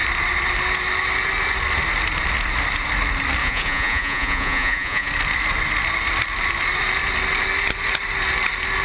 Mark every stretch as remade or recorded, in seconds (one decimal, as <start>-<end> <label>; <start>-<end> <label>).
0.0-3.4 recorded; 3.4-5.1 remade; 5.1-8.8 recorded